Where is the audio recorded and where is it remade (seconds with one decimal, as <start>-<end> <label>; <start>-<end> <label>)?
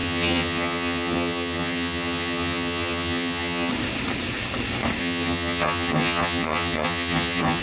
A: 0.0-3.7 remade; 3.7-5.0 recorded; 5.0-7.6 remade